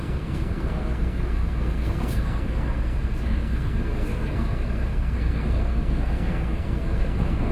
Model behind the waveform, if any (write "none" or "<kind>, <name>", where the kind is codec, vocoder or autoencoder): codec, SNAC